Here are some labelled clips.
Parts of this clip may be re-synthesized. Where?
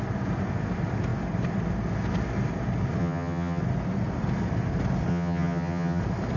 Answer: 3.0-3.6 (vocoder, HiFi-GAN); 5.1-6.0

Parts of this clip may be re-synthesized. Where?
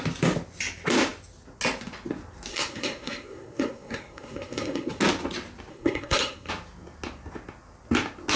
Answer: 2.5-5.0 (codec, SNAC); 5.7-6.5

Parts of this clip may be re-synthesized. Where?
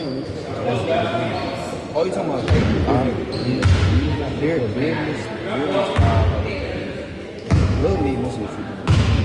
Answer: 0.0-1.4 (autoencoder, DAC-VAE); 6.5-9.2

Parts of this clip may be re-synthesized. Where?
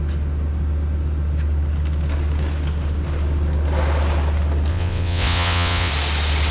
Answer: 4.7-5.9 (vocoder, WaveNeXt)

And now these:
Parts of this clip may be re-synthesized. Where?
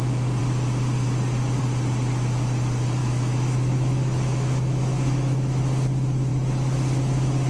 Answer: 3.0-5.6 (autoencoder, DAC-VAE)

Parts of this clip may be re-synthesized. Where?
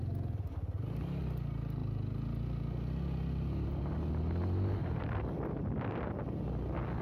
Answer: 4.8-5.5 (vocoder, BigVGAN v2)